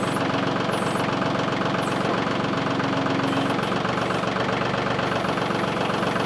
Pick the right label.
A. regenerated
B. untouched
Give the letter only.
B